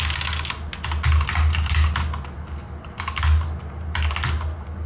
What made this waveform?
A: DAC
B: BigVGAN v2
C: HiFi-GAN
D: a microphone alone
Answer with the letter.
D